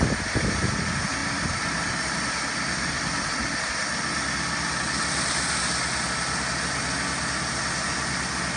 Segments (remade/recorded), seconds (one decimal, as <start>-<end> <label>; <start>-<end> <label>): 0.0-8.6 recorded